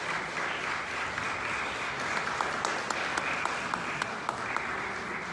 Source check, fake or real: real